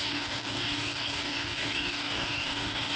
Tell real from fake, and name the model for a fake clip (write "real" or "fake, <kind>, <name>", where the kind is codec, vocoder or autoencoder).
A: fake, codec, DAC